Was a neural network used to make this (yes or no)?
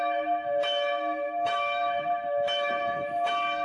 yes